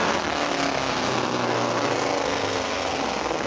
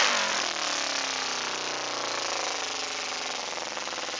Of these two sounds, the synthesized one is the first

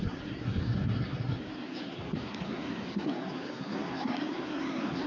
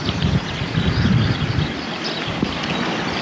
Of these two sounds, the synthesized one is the first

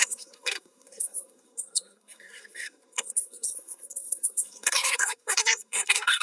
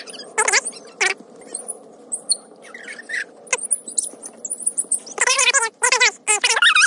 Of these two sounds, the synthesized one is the first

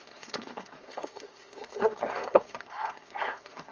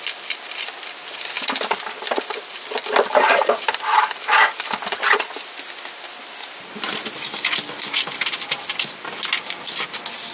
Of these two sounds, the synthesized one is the first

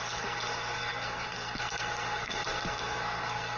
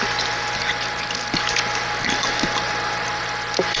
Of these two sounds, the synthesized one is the first